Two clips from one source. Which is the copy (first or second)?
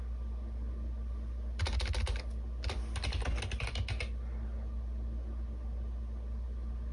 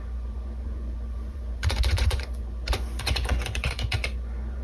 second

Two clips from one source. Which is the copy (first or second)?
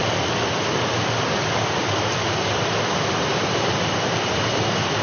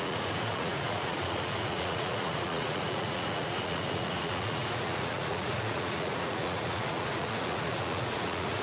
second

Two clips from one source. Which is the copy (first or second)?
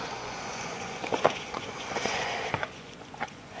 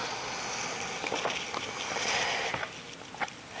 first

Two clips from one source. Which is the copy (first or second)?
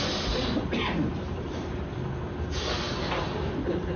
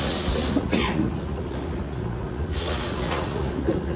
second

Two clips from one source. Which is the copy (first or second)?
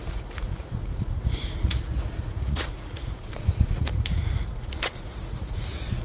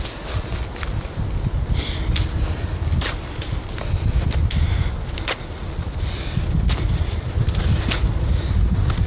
first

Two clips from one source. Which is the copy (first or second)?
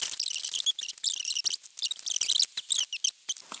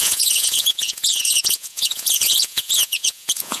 second